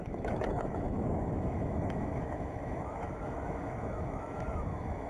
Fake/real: fake